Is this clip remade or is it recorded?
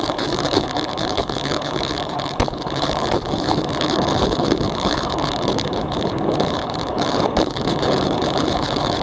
remade